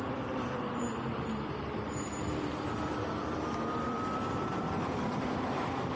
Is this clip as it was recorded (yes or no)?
no